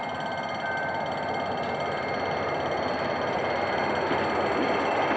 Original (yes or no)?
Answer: yes